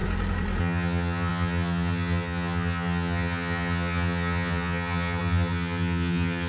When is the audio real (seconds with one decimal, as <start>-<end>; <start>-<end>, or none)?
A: 0.0-0.6